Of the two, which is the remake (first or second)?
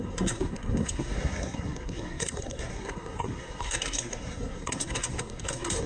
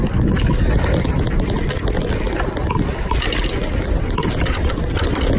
first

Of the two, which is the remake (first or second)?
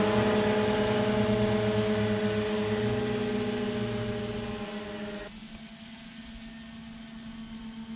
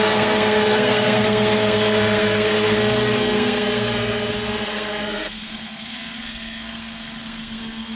second